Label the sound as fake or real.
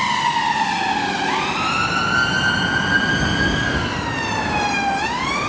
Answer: real